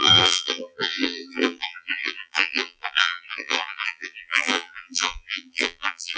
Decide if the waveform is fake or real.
fake